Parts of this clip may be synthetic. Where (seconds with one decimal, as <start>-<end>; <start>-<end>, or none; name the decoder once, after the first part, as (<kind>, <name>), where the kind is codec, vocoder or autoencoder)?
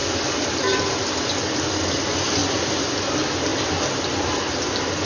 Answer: 0.0-1.2 (vocoder, BigVGAN v2)